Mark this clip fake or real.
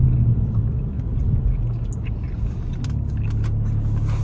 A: real